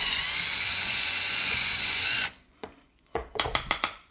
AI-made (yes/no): yes